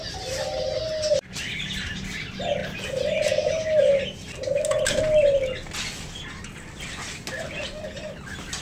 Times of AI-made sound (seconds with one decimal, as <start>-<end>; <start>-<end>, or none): none